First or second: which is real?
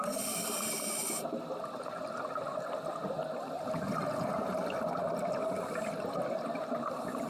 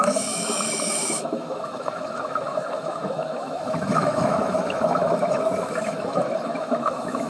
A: first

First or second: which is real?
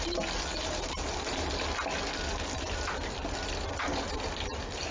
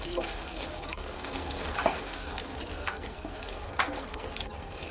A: first